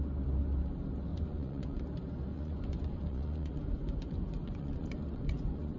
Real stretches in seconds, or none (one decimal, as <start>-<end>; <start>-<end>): 0.0-1.1; 1.8-2.3